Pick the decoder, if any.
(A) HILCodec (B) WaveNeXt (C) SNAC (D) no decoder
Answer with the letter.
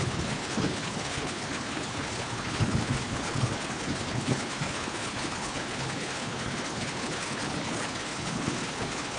A